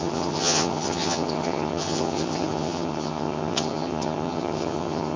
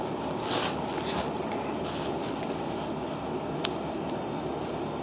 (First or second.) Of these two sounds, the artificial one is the first